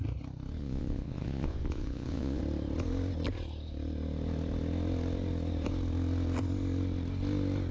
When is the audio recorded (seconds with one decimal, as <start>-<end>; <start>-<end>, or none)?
0.0-0.6; 2.4-7.7